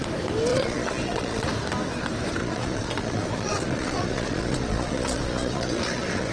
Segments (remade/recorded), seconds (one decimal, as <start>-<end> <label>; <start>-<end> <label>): 0.0-0.5 recorded; 0.5-1.5 remade; 1.5-2.4 recorded; 2.4-6.3 remade